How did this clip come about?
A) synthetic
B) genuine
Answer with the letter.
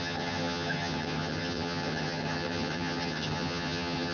A